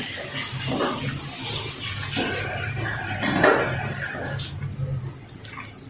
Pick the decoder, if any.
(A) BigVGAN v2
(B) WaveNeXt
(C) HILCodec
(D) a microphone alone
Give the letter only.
D